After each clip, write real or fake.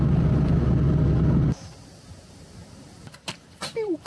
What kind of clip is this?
real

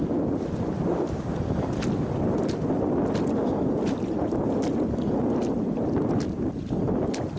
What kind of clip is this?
real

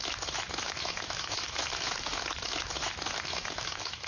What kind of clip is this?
fake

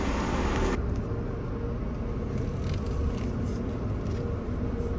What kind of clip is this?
real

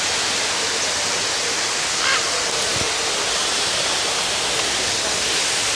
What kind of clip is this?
real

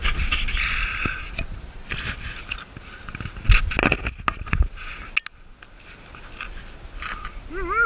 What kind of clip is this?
real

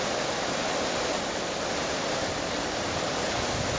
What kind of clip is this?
real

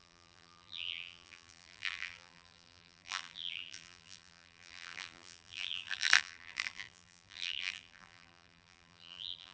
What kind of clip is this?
fake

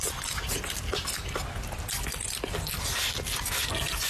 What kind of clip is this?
real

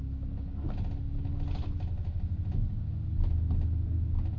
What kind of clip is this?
real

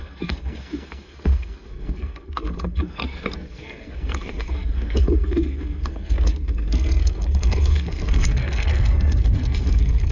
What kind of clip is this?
fake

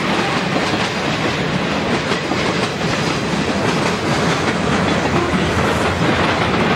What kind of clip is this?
real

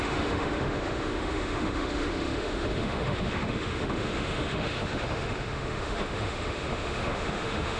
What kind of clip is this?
fake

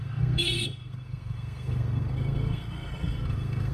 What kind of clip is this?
fake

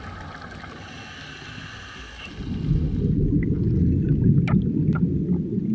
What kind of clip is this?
real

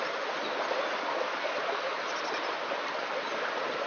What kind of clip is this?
real